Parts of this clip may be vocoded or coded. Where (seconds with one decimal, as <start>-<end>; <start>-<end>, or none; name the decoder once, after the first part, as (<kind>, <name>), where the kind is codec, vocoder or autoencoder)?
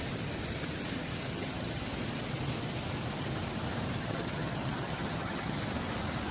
1.3-1.8 (vocoder, HiFi-GAN); 4.0-5.6